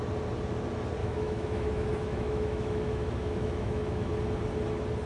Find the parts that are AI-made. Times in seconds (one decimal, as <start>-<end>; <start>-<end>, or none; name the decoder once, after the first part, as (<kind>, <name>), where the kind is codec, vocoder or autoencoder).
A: 1.0-4.1 (autoencoder, DAC-VAE)